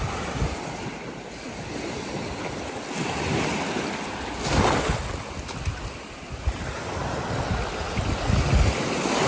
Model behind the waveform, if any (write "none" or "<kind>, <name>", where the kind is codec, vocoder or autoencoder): none